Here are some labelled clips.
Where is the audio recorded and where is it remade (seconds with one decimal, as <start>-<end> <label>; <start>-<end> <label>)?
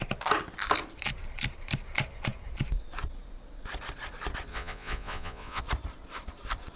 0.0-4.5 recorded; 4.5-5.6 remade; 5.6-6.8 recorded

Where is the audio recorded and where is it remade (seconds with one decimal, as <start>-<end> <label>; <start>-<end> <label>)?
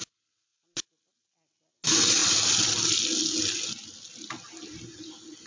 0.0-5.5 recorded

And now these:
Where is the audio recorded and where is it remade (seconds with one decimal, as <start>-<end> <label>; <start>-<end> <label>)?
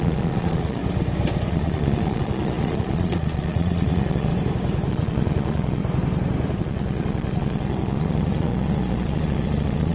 0.0-0.8 remade; 0.8-1.5 recorded; 1.5-4.3 remade; 4.3-4.9 recorded; 4.9-5.8 remade; 5.8-6.6 recorded; 6.6-9.9 remade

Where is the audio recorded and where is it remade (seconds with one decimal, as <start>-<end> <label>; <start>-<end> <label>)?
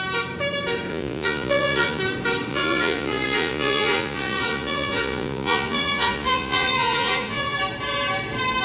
0.0-0.9 recorded; 0.9-2.0 remade; 2.0-2.5 recorded; 2.5-7.6 remade; 7.6-8.6 recorded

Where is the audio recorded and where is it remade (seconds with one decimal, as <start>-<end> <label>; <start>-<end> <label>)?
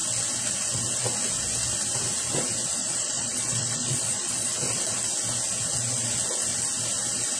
0.0-2.8 recorded; 2.8-4.5 remade; 4.5-7.4 recorded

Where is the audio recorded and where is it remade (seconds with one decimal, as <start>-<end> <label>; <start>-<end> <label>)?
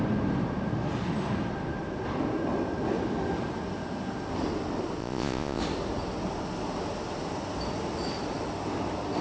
0.0-5.0 recorded; 5.0-5.6 remade; 5.6-9.2 recorded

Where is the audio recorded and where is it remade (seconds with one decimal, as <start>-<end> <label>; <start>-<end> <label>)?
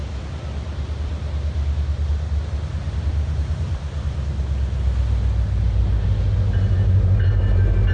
0.0-7.9 recorded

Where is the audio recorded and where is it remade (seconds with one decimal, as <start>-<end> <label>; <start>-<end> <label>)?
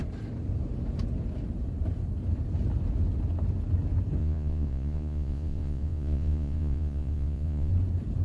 0.0-4.2 recorded; 4.2-7.7 remade; 7.7-8.2 recorded